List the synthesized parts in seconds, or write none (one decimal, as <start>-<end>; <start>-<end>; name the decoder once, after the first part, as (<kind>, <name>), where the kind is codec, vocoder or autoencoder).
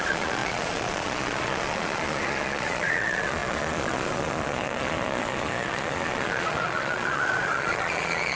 0.0-8.3 (vocoder, Vocos)